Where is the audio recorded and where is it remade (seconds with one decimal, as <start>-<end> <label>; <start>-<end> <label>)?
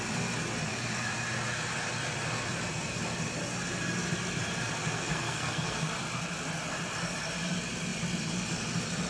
0.0-4.8 recorded; 4.8-5.9 remade; 5.9-9.1 recorded